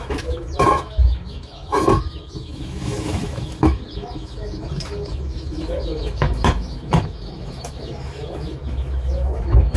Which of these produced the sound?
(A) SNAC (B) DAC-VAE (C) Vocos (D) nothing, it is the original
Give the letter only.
B